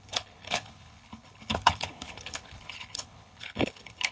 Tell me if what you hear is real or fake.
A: fake